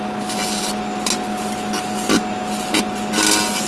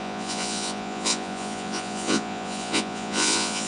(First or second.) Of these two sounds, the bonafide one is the first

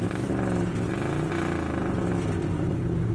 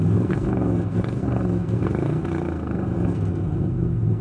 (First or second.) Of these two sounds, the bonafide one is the first